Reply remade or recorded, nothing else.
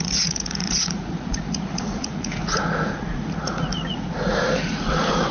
remade